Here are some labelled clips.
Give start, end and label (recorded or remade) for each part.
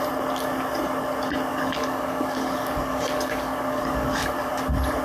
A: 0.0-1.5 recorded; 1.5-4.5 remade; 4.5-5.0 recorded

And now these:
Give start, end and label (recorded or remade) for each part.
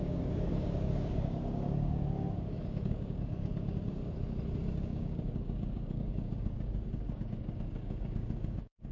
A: 0.0-4.0 remade; 4.0-4.8 recorded; 4.8-8.9 remade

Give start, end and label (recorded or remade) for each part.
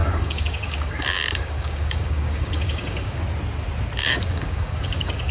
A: 0.0-3.2 remade; 3.2-4.0 recorded; 4.0-5.3 remade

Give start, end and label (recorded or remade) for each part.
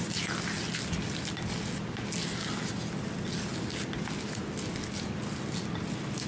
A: 0.0-6.3 recorded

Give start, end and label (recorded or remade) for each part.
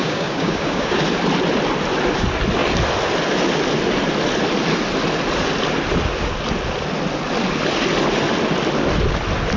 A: 0.0-1.0 remade; 1.0-9.6 recorded